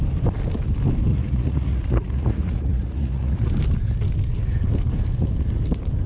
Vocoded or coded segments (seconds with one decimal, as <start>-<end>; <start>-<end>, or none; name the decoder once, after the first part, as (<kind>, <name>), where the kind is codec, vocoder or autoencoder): 1.1-3.5 (vocoder, Vocos)